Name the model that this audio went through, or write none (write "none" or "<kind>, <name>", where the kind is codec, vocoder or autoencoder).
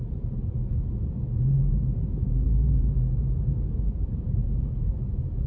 vocoder, Vocos